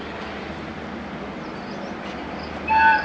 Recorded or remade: recorded